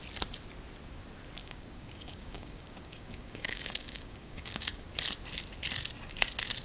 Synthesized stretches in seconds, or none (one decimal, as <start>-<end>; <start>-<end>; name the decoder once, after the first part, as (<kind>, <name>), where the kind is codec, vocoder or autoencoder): 1.4-4.8 (codec, DAC)